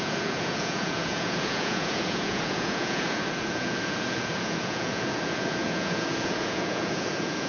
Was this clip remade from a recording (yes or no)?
yes